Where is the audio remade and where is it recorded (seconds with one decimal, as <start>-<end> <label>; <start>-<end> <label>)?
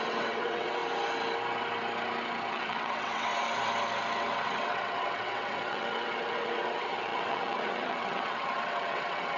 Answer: 0.0-0.8 remade; 0.8-2.5 recorded; 2.5-3.3 remade; 3.3-4.3 recorded; 4.3-9.4 remade